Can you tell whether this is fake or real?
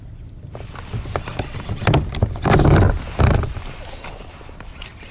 real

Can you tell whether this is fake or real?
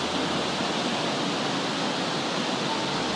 real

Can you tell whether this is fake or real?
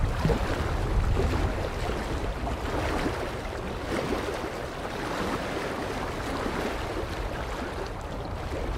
real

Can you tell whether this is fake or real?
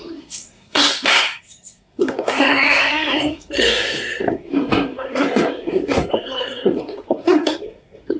fake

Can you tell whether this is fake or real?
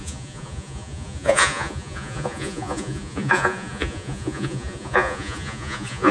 fake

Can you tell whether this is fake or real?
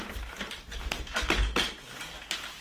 real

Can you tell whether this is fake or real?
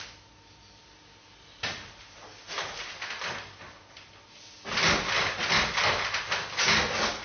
real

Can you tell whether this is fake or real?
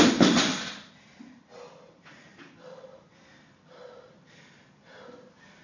real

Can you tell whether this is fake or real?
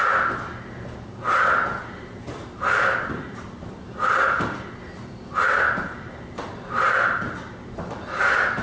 real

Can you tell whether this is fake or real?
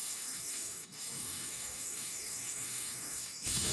fake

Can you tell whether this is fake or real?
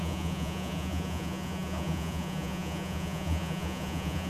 fake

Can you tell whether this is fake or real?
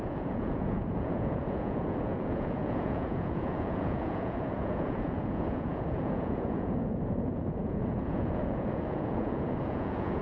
fake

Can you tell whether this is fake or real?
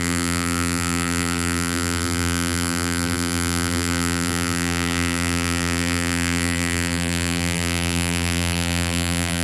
fake